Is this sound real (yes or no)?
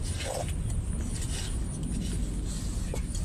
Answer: yes